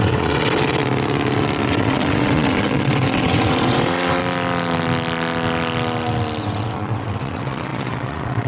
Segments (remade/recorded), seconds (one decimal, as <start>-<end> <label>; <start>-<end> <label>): 0.0-0.8 remade; 0.8-1.7 recorded; 1.7-4.2 remade; 4.2-6.4 recorded; 6.4-8.5 remade